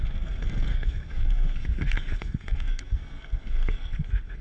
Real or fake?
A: fake